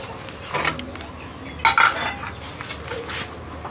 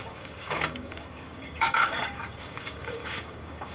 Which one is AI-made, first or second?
second